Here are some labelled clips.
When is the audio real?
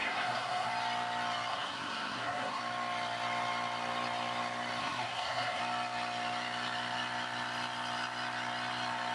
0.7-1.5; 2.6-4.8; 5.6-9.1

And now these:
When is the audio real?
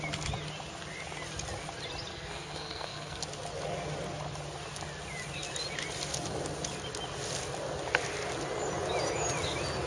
0.0-2.1; 3.2-9.9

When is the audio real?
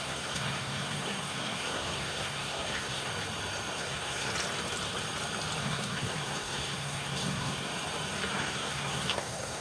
3.1-3.7; 4.3-5.6; 7.7-8.3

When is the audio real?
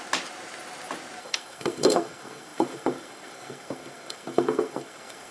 0.0-1.2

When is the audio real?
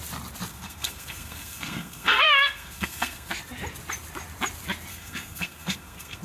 0.0-0.5; 3.3-4.9